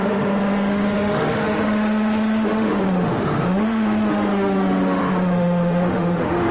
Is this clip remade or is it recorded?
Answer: remade